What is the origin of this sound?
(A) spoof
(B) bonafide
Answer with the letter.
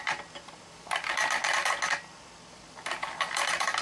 B